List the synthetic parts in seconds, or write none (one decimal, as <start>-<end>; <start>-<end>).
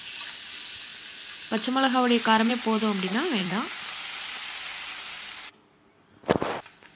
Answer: 3.4-7.0